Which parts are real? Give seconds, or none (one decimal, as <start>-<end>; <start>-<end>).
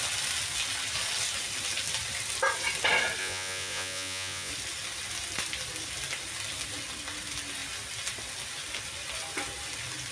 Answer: 0.0-3.2; 4.5-10.1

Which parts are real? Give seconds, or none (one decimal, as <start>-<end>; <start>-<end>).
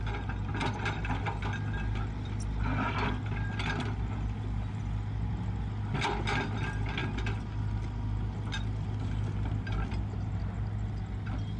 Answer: 0.0-11.6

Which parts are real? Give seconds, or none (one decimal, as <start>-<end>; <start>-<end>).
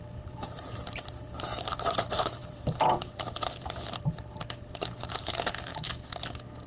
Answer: 5.7-6.7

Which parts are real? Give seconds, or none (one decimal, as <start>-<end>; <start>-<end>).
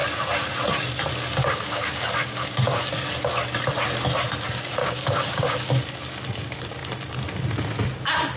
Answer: 0.0-1.4; 2.9-4.8; 5.7-8.4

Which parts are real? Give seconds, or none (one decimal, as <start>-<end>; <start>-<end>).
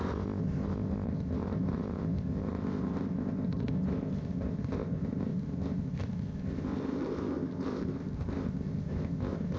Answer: none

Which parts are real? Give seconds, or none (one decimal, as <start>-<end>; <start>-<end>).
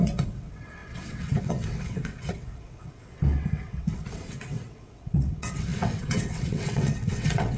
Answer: none